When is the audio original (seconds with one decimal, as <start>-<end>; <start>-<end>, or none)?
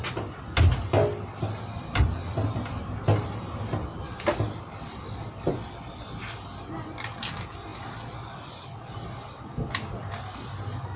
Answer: 0.0-11.0